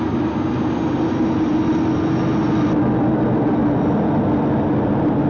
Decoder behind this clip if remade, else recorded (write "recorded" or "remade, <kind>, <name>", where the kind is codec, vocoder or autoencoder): recorded